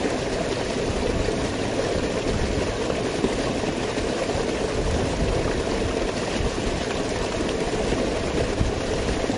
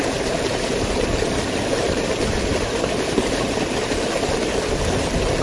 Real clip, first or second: first